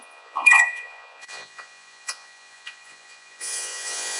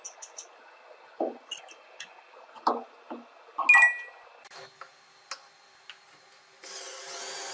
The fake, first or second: first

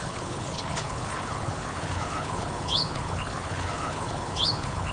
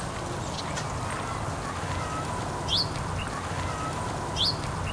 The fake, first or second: first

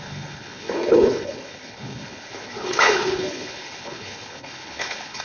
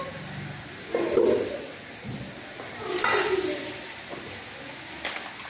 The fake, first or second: first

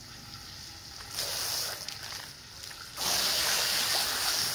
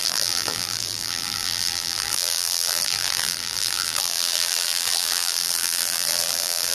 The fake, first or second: second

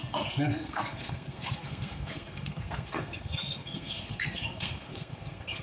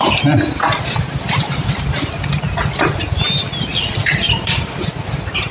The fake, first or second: first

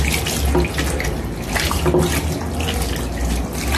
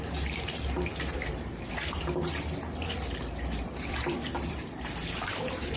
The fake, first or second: second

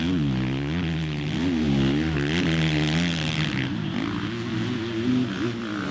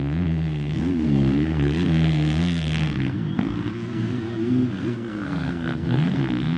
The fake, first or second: second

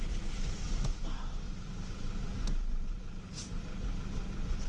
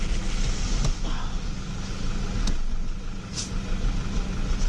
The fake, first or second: first